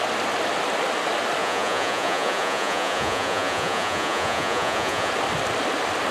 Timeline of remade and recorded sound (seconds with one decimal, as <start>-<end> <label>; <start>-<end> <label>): 0.0-1.4 recorded; 1.4-5.1 remade; 5.1-6.1 recorded